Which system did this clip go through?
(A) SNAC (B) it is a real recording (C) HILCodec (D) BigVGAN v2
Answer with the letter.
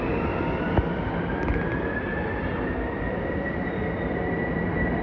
D